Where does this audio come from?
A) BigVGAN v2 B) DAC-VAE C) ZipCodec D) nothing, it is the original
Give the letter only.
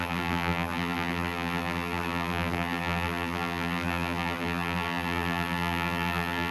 A